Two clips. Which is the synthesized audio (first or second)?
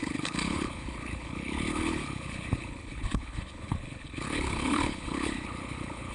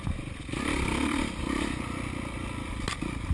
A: first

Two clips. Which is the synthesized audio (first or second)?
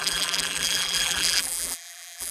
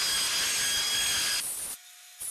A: first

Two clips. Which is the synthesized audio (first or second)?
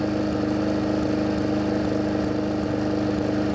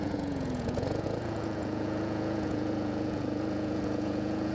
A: second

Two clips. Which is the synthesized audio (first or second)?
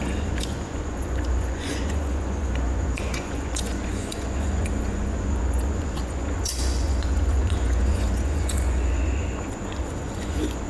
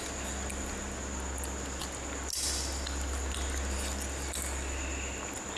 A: first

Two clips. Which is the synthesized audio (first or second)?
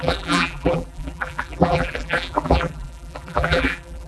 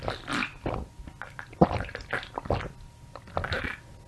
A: first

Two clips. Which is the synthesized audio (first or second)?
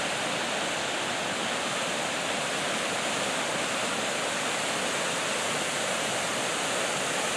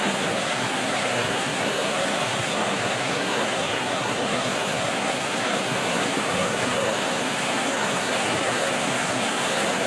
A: second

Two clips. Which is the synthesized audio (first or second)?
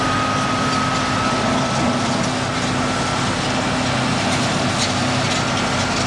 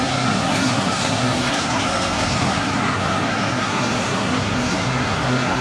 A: second